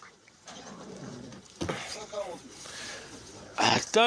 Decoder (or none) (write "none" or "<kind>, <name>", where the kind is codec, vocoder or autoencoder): vocoder, Vocos